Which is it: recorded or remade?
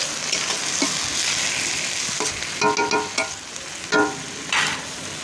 recorded